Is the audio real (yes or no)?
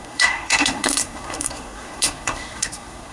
no